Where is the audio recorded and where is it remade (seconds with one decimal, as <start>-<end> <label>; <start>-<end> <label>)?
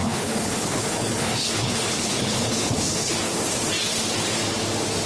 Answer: 0.0-3.1 remade; 3.1-5.1 recorded